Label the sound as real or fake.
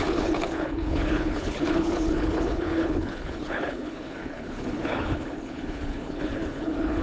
fake